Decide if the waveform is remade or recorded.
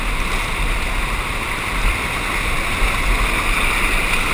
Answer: recorded